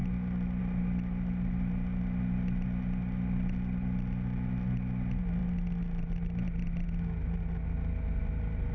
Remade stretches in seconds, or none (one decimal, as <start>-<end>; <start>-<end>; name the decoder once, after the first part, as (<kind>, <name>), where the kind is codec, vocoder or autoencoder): none